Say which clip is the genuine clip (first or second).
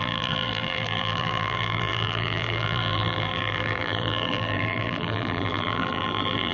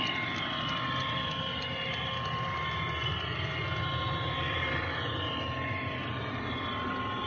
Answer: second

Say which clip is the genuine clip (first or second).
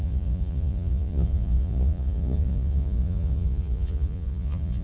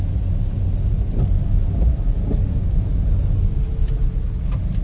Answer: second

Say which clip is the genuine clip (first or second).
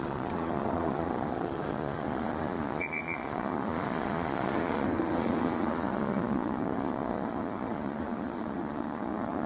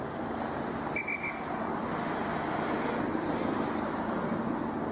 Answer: second